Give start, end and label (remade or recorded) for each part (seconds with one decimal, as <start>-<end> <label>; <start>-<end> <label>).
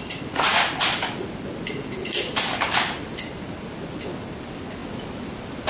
0.0-5.7 recorded